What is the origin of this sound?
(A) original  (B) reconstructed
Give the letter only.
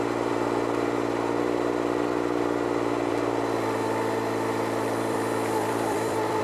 B